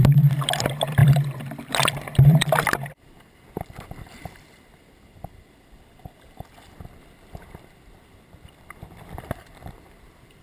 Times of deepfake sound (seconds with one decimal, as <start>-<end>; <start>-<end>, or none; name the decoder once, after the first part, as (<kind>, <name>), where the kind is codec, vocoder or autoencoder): 0.0-10.4 (vocoder, BigVGAN v2)